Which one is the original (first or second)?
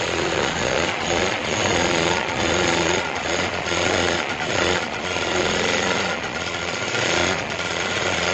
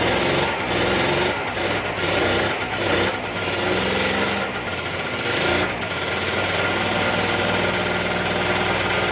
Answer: second